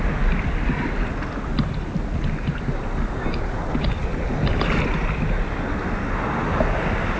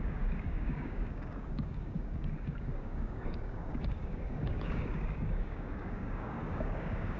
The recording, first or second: first